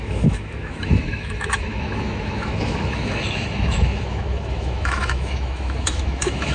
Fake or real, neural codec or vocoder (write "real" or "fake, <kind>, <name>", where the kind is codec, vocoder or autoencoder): fake, autoencoder, DAC-VAE